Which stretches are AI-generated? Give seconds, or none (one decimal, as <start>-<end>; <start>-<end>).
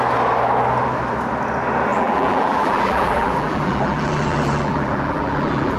1.9-5.8